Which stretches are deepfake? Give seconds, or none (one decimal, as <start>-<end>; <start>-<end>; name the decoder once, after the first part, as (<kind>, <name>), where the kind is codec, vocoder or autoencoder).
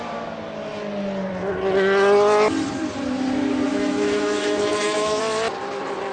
3.7-5.2 (autoencoder, DAC-VAE)